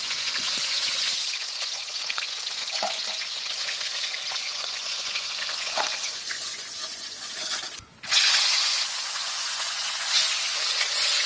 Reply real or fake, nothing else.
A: fake